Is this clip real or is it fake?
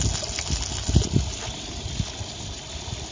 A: real